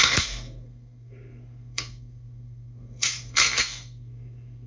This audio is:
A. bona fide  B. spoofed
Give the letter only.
B